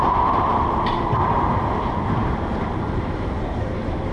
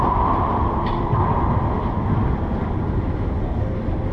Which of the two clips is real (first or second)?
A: second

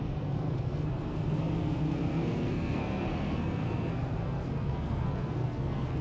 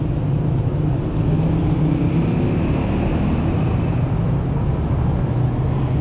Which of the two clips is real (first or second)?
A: second